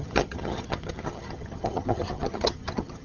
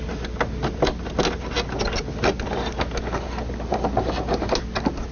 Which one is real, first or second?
second